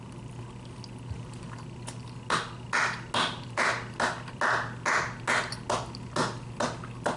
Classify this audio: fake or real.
real